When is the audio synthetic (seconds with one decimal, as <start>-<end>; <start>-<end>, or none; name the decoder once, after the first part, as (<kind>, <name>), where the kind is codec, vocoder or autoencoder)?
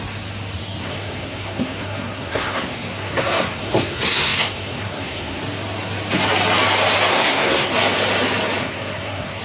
0.8-5.4 (codec, SNAC); 7.1-7.7; 8.6-9.4